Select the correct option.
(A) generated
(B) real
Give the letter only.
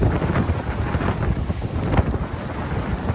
B